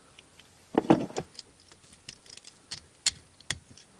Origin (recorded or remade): recorded